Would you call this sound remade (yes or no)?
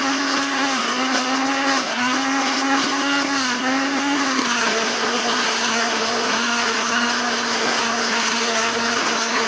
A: yes